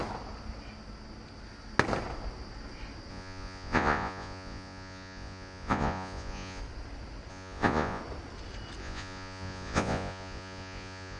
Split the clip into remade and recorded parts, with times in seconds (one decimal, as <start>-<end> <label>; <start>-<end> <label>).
0.0-3.1 recorded; 3.1-6.6 remade; 6.6-7.3 recorded; 7.3-8.0 remade; 8.0-8.8 recorded; 8.8-11.2 remade